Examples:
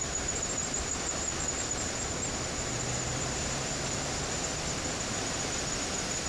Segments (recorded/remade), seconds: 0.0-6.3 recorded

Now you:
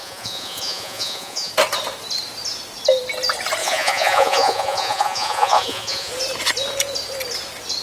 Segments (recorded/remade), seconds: 0.0-1.5 remade; 1.5-3.6 recorded; 3.6-6.1 remade; 6.1-7.8 recorded

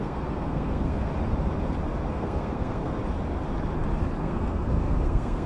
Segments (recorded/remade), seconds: 0.0-1.1 remade; 1.1-2.1 recorded; 2.1-3.0 remade; 3.0-4.2 recorded; 4.2-5.5 remade

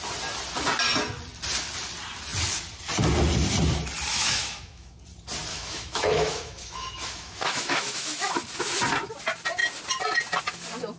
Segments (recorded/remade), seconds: 0.0-4.1 recorded; 4.1-5.0 remade; 5.0-5.5 recorded; 5.5-8.3 remade; 8.3-11.0 recorded

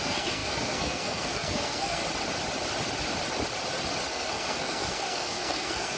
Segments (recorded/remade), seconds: 0.0-2.0 remade; 2.0-4.1 recorded; 4.1-6.0 remade

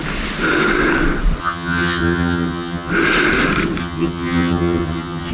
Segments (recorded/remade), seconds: 0.0-1.4 recorded; 1.4-2.9 remade; 2.9-3.8 recorded; 3.8-5.3 remade

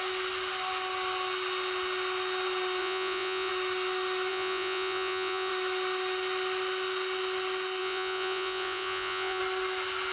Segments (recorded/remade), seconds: 0.0-2.8 recorded; 2.8-3.5 remade; 3.5-4.3 recorded; 4.3-5.5 remade; 5.5-7.8 recorded; 7.8-9.4 remade; 9.4-10.1 recorded